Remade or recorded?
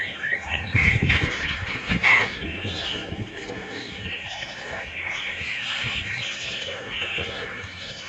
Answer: remade